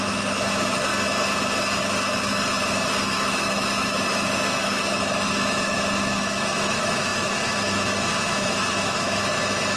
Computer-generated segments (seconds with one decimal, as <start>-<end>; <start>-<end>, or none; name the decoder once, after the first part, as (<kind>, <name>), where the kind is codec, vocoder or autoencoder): 0.0-0.9 (autoencoder, DAC-VAE); 1.8-9.8

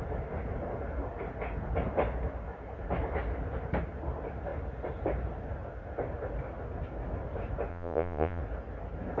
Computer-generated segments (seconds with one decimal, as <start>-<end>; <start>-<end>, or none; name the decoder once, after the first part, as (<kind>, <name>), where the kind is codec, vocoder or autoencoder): 7.7-8.4 (vocoder, Vocos)

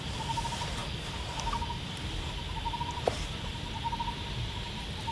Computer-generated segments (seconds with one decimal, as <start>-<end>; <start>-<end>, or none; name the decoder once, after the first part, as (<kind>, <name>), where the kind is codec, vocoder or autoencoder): none

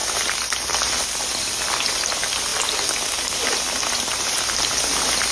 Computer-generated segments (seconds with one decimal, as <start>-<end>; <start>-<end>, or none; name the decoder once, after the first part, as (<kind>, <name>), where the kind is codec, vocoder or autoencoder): none

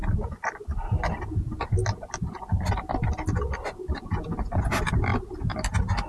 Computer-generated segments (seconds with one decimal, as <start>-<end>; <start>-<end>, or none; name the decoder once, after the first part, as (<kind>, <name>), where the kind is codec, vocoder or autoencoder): none

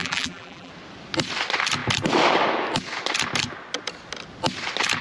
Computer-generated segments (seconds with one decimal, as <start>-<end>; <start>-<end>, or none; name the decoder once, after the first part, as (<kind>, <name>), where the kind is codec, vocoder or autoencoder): 0.0-0.7 (vocoder, BigVGAN v2)

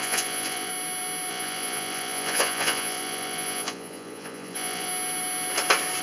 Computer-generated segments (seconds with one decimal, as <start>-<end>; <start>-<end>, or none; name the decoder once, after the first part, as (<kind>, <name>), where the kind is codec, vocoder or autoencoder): 0.0-0.7 (vocoder, Vocos); 1.3-4.9